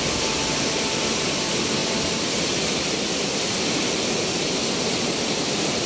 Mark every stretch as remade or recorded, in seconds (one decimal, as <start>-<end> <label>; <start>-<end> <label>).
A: 0.0-0.6 recorded; 0.6-1.8 remade; 1.8-5.3 recorded; 5.3-5.9 remade